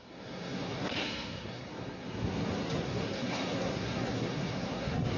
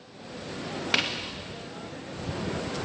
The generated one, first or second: first